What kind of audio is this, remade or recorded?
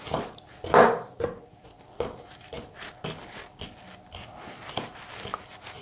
recorded